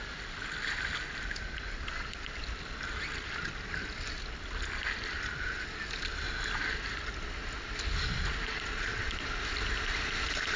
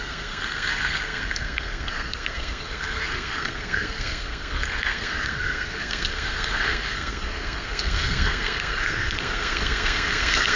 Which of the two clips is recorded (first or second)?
first